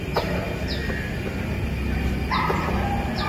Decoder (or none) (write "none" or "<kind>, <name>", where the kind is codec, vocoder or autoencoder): none